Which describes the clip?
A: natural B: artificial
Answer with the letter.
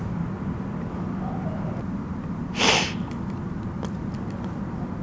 A